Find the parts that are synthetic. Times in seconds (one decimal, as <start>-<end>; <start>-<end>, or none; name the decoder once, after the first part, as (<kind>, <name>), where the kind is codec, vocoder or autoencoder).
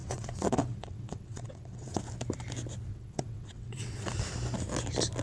0.0-2.0 (vocoder, WaveNeXt); 2.9-4.1